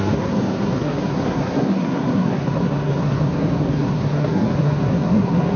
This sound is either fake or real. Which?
fake